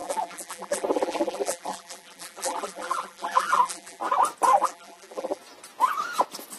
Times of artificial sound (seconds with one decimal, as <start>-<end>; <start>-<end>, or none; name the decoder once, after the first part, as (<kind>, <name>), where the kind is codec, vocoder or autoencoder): 0.0-4.0 (vocoder, BigVGAN v2); 4.5-5.4